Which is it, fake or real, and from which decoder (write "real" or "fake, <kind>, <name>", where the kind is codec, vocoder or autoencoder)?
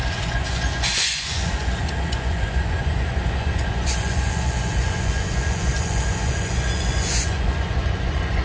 fake, vocoder, Vocos